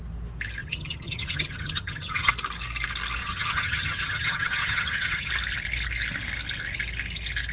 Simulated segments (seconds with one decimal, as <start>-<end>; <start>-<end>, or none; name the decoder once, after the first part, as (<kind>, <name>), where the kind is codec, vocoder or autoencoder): 0.6-2.3 (vocoder, HiFi-GAN); 3.2-5.3

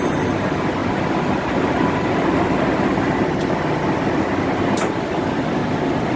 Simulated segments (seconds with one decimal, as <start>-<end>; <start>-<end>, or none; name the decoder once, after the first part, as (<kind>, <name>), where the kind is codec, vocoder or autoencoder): none